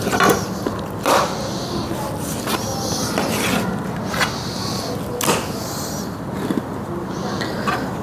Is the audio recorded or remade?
recorded